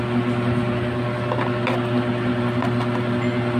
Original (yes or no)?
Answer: yes